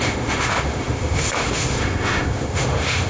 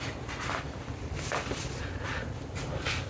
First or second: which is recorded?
second